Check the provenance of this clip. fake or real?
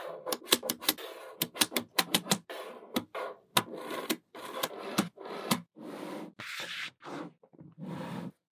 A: real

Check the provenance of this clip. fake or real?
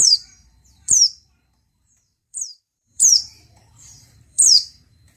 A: fake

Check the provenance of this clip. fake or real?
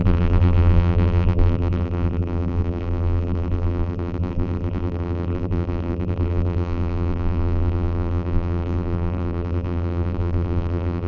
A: fake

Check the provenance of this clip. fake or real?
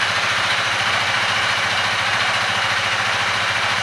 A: fake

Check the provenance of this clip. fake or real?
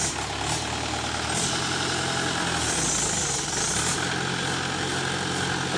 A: real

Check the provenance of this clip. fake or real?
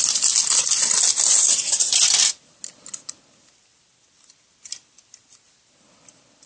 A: real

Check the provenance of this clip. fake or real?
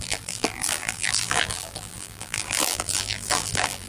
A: fake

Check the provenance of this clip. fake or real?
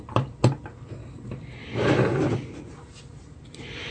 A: real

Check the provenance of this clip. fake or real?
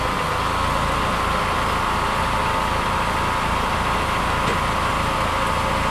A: real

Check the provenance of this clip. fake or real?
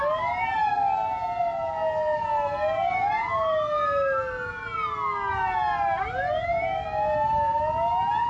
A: real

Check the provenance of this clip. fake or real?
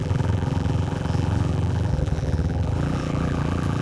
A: fake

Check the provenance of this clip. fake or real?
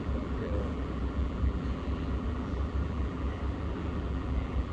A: fake